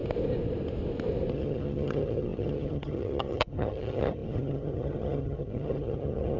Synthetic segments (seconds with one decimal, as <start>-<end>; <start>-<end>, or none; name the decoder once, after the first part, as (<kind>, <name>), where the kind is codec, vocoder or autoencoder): 1.3-6.4 (vocoder, HiFi-GAN)